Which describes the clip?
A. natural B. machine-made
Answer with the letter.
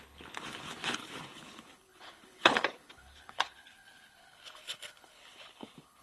B